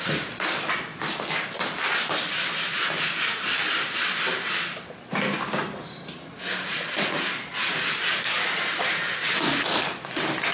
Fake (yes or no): no